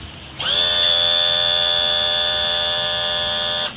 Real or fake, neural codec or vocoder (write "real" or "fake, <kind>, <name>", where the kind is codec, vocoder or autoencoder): real